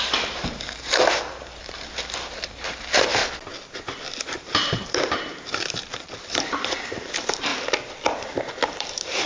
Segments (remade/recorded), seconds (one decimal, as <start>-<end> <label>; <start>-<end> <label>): 0.0-3.2 remade; 3.2-4.2 recorded; 4.2-7.5 remade; 7.5-8.6 recorded; 8.6-9.3 remade